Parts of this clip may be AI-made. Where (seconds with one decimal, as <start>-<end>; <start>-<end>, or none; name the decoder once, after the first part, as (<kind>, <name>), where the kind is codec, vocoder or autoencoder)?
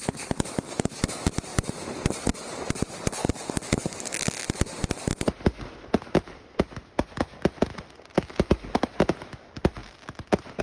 3.2-4.2 (codec, DAC)